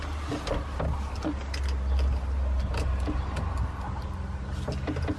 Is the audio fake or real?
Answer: real